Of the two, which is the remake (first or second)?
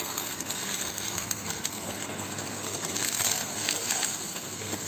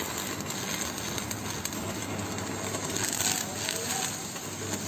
first